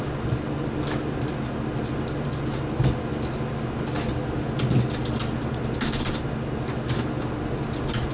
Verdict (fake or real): real